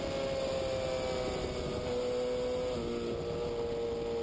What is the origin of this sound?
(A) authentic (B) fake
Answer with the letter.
A